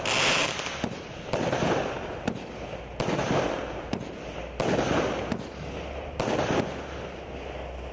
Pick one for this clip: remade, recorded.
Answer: recorded